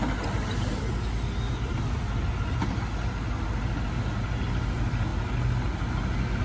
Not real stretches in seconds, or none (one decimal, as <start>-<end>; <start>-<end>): none